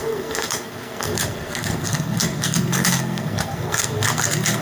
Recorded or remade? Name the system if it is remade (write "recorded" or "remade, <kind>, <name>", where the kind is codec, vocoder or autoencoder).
remade, codec, SNAC